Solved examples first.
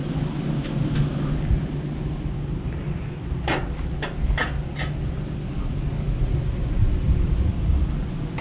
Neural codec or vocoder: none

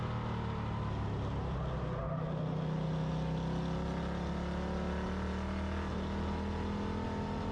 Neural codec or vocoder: none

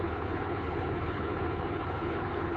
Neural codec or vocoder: codec, HILCodec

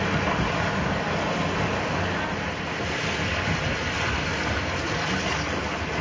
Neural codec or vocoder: none